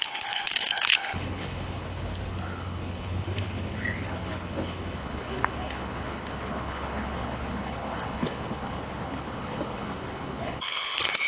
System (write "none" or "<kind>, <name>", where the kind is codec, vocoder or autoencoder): codec, HILCodec